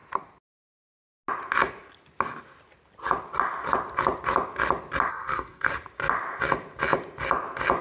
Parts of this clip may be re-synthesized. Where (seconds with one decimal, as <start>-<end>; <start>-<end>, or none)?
5.1-5.7